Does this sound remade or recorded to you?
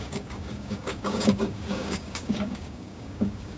remade